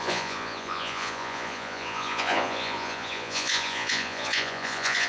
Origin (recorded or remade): remade